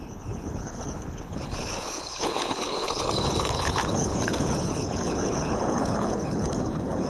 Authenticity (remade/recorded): remade